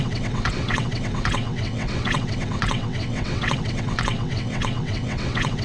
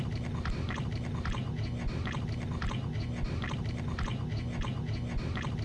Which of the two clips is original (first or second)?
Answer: second